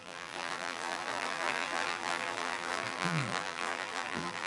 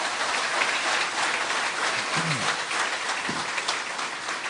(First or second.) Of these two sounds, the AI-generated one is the first